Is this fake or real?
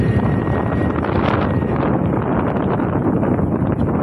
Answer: real